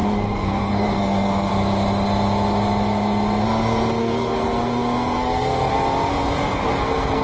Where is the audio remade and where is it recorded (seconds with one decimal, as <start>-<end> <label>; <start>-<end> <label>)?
0.0-1.5 remade; 1.5-4.0 recorded; 4.0-5.7 remade; 5.7-6.7 recorded; 6.7-7.2 remade